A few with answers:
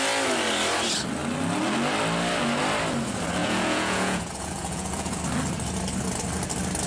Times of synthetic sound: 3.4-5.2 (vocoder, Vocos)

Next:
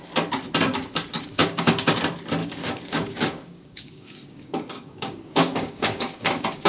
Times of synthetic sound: 1.4-2.0 (codec, DAC); 2.4-6.7

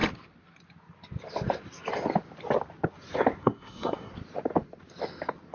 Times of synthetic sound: 3.4-4.1 (codec, SNAC)

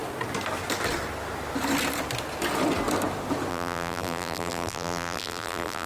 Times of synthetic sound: 3.5-5.9 (vocoder, BigVGAN v2)

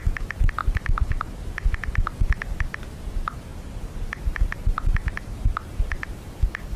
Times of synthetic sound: 0.6-1.9 (vocoder, BigVGAN v2); 3.5-6.3